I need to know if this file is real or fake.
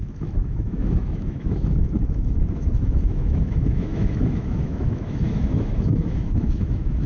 fake